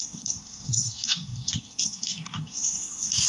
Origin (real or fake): fake